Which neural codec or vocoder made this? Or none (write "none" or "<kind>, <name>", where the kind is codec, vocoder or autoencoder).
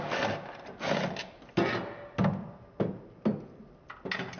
none